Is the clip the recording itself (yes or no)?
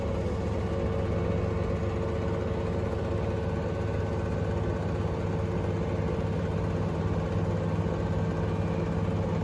yes